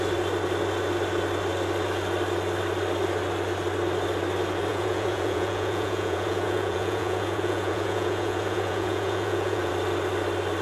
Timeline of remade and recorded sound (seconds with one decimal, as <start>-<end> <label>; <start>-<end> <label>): 0.0-4.7 recorded; 4.7-9.7 remade; 9.7-10.6 recorded